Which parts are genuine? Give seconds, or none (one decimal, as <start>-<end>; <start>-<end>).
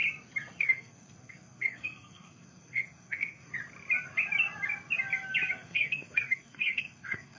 0.0-0.6; 3.5-5.5